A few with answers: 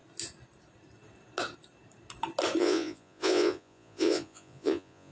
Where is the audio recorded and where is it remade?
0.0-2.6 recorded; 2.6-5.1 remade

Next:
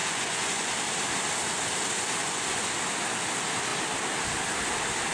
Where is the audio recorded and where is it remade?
0.0-0.7 remade; 0.7-2.2 recorded; 2.2-2.7 remade; 2.7-5.1 recorded

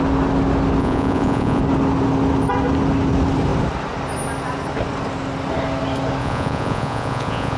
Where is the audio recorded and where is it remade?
0.0-0.8 recorded; 0.8-1.6 remade; 1.6-6.2 recorded; 6.2-7.6 remade

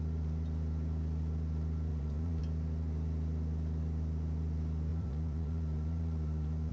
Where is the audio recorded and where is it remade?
0.0-1.9 recorded; 1.9-2.4 remade; 2.4-4.9 recorded; 4.9-6.7 remade

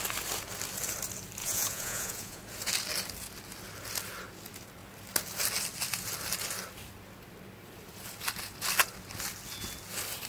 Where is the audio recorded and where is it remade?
0.0-1.4 recorded; 1.4-2.4 remade; 2.4-10.3 recorded

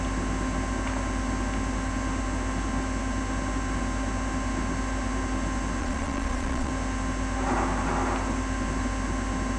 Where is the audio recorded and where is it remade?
0.0-5.8 recorded; 5.8-6.7 remade; 6.7-9.6 recorded

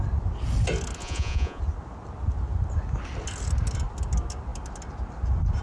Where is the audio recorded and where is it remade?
0.0-1.0 recorded; 1.0-1.6 remade; 1.6-5.6 recorded